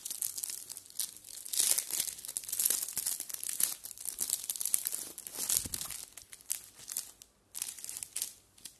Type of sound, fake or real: real